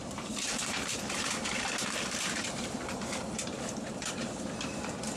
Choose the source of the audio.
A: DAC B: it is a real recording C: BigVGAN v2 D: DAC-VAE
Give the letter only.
C